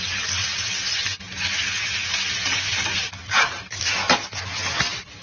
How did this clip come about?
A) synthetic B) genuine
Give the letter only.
B